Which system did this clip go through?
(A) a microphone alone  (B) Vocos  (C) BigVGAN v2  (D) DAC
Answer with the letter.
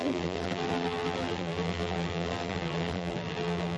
C